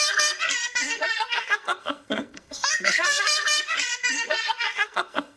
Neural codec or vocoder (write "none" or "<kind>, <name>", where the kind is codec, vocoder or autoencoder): codec, SNAC